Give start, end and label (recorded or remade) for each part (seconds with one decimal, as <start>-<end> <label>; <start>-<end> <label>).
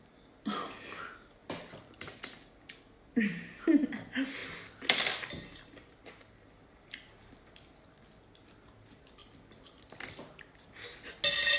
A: 0.0-9.2 recorded; 9.2-10.4 remade; 10.4-11.6 recorded